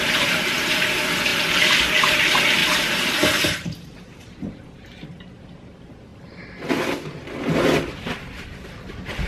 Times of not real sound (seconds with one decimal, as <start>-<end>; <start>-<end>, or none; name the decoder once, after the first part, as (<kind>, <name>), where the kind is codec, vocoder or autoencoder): 0.0-1.3 (vocoder, BigVGAN v2); 2.0-6.1; 8.9-9.3